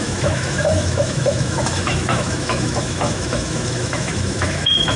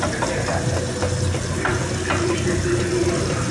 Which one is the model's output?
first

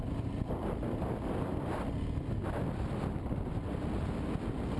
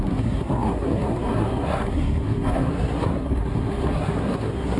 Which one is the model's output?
second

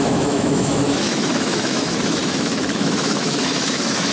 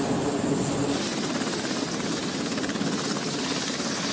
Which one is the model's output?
first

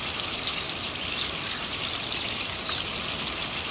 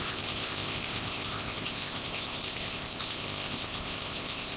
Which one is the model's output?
second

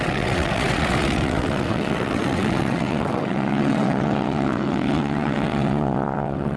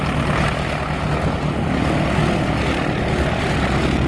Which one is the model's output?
first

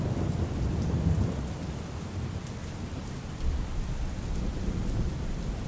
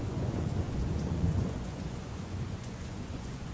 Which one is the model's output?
second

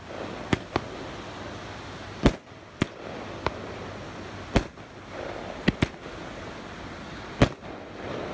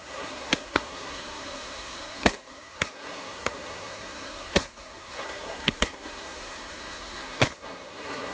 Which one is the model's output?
second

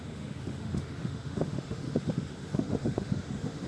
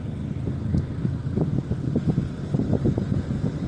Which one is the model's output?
first